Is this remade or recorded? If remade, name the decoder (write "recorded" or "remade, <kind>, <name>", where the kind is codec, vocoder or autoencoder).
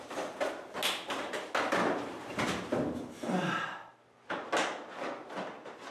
recorded